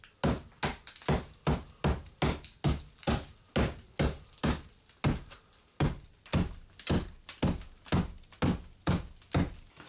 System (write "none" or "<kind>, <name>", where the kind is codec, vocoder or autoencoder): none